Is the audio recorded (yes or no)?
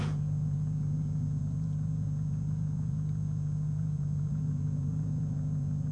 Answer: no